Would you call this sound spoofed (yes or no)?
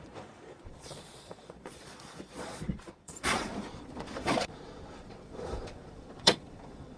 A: yes